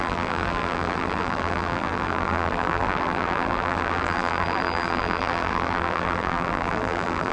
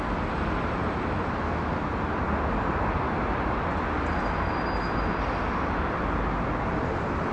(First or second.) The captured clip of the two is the second